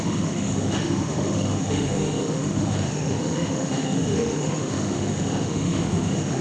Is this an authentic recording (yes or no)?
no